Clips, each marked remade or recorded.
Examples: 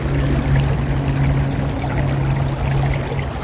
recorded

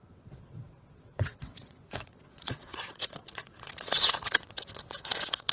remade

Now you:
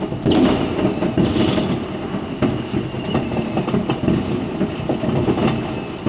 recorded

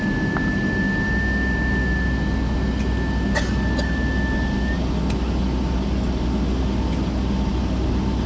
recorded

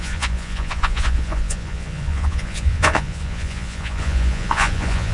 remade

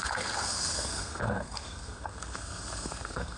remade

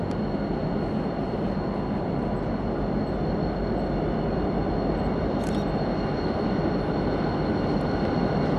recorded